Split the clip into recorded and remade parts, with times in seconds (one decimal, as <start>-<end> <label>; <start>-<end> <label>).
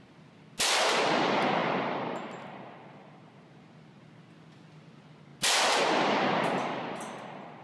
0.0-7.6 recorded